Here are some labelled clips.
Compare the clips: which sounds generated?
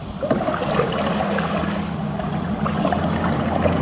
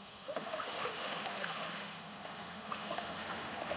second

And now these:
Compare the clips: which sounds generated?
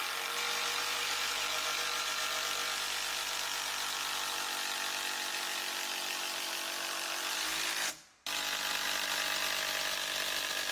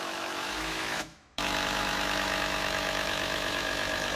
second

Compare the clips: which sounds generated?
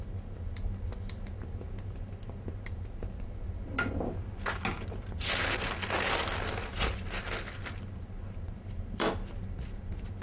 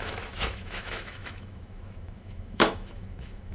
second